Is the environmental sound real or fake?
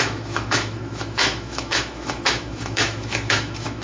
fake